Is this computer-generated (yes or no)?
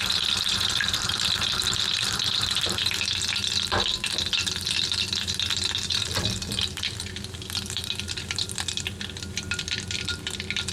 yes